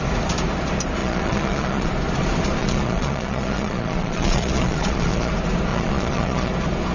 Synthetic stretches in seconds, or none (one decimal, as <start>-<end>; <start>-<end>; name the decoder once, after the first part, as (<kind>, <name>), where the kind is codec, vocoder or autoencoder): 1.0-1.9 (vocoder, Vocos); 2.6-5.3; 5.7-6.5